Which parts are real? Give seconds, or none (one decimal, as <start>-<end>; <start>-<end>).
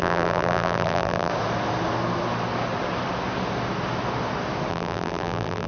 1.3-4.7